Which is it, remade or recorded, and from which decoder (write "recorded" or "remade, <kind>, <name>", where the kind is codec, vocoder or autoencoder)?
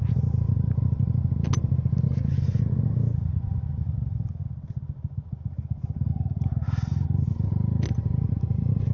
recorded